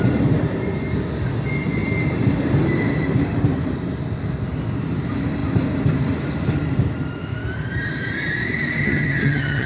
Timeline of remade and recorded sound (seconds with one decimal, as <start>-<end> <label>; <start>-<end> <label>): 0.0-8.8 recorded; 8.8-9.7 remade